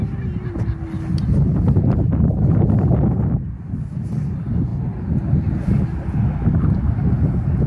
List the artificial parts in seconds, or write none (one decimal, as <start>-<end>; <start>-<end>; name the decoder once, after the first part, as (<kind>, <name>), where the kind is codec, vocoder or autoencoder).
none